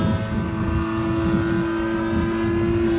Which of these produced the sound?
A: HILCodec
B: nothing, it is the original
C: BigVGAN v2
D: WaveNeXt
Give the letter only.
B